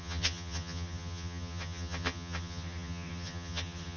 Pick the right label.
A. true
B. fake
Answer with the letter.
B